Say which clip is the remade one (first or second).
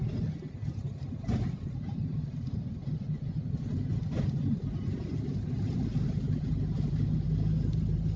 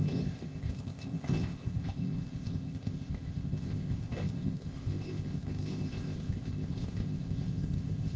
second